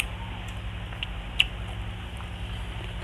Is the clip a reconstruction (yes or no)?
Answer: no